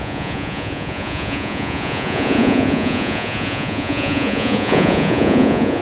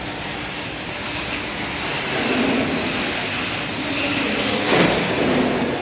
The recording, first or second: second